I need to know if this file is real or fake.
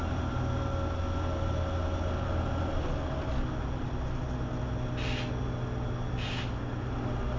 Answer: real